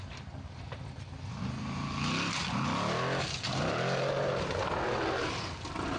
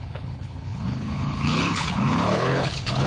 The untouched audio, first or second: first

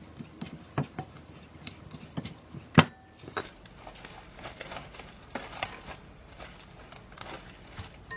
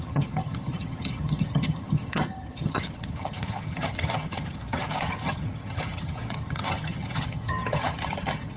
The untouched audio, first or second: first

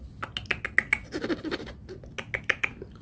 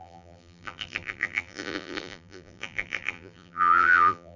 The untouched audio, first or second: first